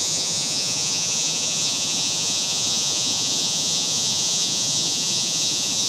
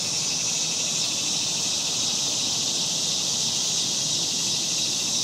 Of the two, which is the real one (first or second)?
second